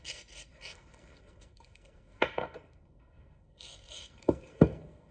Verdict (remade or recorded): remade